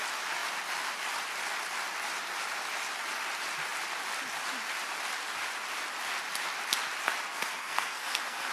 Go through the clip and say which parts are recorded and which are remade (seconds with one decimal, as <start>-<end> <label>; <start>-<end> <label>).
0.0-7.3 recorded; 7.3-8.5 remade